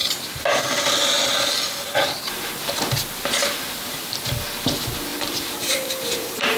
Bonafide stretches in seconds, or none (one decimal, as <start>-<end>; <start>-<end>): 0.0-5.1